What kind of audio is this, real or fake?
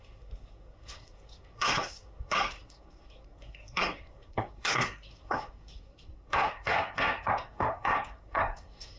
fake